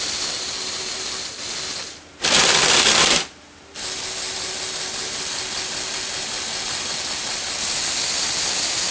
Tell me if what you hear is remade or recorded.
recorded